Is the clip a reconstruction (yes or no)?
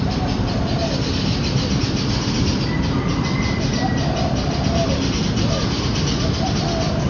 no